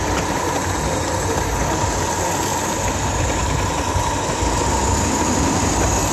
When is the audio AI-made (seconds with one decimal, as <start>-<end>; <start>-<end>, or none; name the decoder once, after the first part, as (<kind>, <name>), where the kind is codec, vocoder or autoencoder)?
none